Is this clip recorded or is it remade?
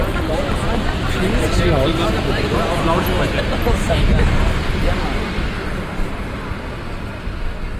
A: recorded